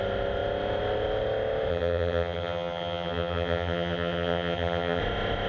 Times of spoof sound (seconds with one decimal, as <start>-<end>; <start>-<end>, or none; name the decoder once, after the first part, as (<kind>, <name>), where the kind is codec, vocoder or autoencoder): 1.7-5.0 (vocoder, HiFi-GAN)